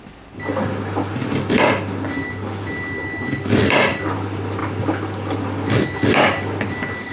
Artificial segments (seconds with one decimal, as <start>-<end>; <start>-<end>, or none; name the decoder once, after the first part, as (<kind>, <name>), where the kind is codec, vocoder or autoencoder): none